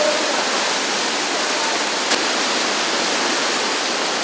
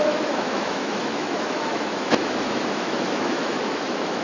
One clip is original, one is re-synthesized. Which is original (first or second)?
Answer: first